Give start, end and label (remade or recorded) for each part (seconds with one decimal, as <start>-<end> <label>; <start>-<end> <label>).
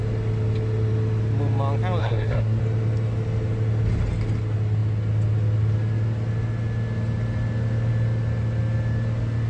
0.0-2.0 recorded; 2.0-2.6 remade; 2.6-9.5 recorded